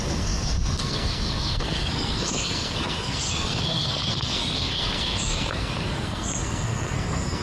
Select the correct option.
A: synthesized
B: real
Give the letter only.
A